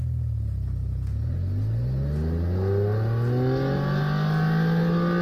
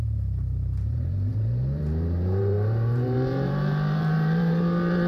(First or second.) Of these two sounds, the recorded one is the first